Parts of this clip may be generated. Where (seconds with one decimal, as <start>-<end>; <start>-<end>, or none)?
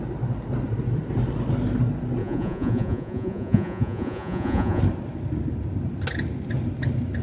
2.2-4.8